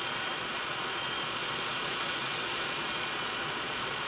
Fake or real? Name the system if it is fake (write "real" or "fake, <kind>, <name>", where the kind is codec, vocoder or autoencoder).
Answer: fake, vocoder, Vocos